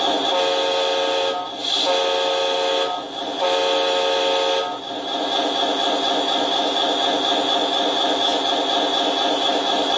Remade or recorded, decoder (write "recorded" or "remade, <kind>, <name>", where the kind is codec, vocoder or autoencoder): recorded